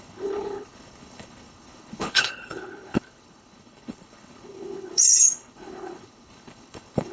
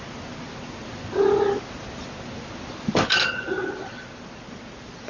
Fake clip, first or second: first